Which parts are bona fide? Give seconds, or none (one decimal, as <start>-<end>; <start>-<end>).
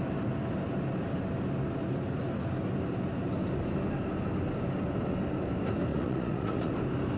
0.0-5.9; 6.7-7.2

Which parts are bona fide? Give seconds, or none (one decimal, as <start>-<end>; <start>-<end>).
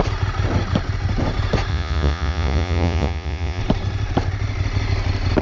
0.0-1.7; 3.6-5.4